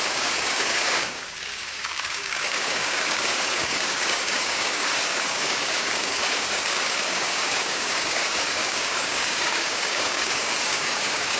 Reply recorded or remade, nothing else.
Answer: remade